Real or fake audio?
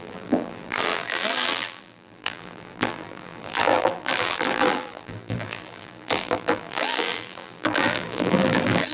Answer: fake